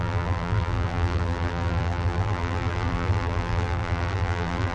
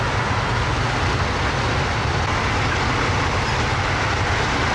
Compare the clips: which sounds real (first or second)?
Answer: second